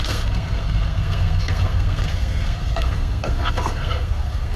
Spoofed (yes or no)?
yes